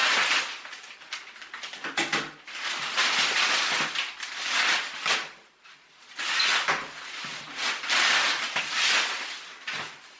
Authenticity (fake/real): real